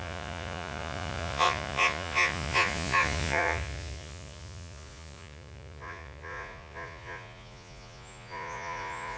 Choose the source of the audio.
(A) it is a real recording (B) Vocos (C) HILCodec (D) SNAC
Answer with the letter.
B